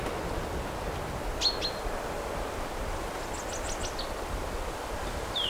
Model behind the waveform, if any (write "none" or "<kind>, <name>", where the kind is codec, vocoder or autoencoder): none